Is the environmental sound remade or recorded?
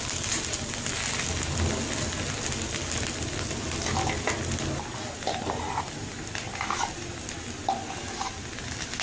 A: recorded